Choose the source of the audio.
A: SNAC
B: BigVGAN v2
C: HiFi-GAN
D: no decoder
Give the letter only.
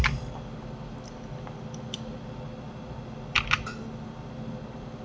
D